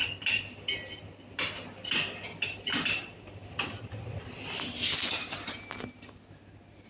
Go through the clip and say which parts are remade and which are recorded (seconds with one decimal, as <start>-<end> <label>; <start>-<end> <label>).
0.0-1.4 recorded; 1.4-6.9 remade